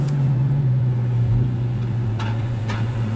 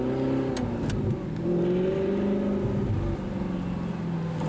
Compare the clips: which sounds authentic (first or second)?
second